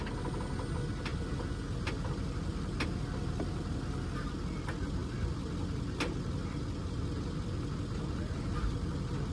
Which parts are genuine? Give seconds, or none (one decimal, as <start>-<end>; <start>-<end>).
0.0-9.3